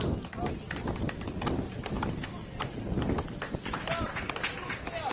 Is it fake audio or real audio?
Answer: real